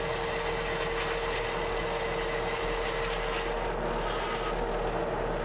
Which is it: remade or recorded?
recorded